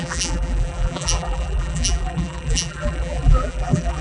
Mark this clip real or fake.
fake